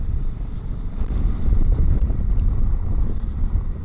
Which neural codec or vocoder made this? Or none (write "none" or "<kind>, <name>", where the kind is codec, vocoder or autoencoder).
vocoder, BigVGAN v2